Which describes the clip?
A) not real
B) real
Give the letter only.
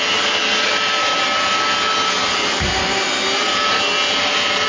B